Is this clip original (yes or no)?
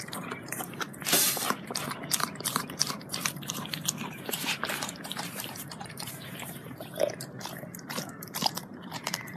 no